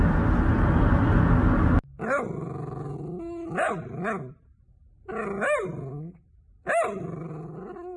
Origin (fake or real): real